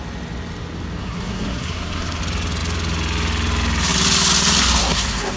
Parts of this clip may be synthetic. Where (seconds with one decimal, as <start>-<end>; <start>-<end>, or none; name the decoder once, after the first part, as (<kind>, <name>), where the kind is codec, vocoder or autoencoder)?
1.0-2.2 (codec, SNAC); 4.8-5.4